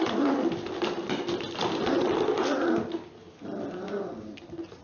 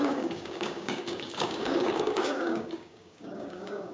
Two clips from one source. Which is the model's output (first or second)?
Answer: second